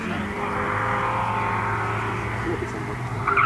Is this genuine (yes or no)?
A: yes